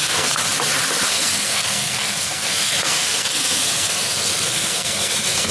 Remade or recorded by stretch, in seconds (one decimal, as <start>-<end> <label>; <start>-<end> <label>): 0.0-0.4 remade; 0.4-1.1 recorded; 1.1-5.5 remade